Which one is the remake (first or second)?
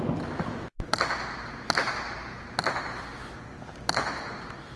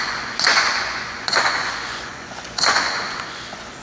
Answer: second